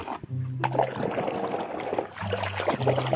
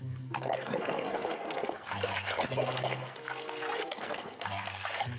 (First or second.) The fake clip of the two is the second